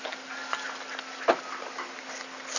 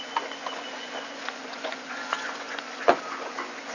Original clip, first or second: first